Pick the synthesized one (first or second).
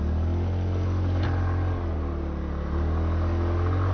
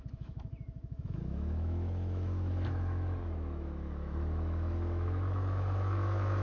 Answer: second